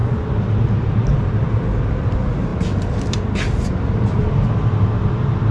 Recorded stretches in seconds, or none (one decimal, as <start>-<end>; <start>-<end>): 0.0-5.5